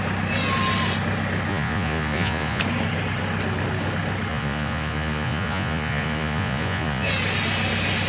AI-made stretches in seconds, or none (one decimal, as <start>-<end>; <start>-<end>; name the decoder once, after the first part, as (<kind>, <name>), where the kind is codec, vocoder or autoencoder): 1.5-2.6 (vocoder, Vocos); 4.3-7.1